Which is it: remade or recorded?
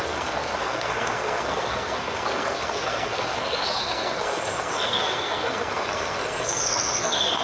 remade